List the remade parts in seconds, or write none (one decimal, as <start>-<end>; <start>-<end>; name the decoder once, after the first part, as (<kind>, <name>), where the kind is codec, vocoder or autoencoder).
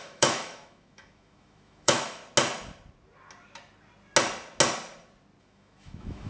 0.0-2.2 (autoencoder, DAC-VAE); 5.4-6.3